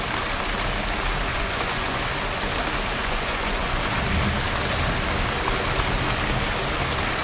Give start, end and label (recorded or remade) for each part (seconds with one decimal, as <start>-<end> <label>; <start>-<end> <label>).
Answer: 0.0-1.3 recorded; 1.3-2.0 remade; 2.0-3.0 recorded; 3.0-3.8 remade; 3.8-7.2 recorded